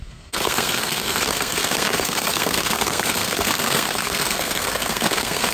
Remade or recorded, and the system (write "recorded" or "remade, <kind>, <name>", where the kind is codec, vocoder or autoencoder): remade, codec, SNAC